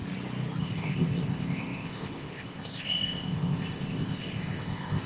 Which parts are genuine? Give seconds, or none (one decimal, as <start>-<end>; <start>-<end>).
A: 0.0-0.6